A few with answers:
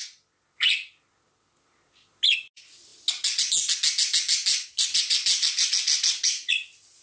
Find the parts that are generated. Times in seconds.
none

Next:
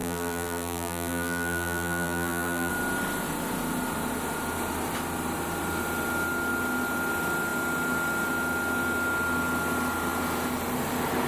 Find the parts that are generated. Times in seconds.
0.0-2.7 (vocoder, BigVGAN v2)

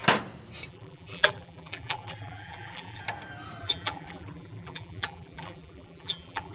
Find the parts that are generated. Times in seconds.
0.7-3.0 (vocoder, BigVGAN v2); 3.6-6.5

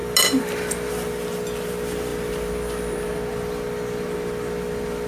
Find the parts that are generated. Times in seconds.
none

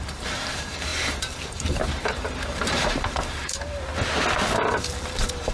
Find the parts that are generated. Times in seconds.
0.0-3.9 (vocoder, BigVGAN v2); 4.7-5.5

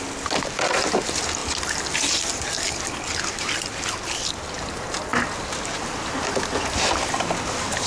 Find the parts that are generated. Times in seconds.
none